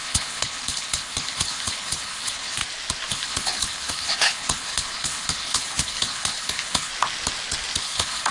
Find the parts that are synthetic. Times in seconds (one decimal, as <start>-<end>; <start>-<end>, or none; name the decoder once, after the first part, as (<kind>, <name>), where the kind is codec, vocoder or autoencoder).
0.0-2.6 (codec, HILCodec); 3.1-6.9; 7.8-8.3